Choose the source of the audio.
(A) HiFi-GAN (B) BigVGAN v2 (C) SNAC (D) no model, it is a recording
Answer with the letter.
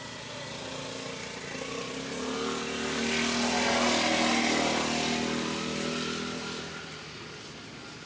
D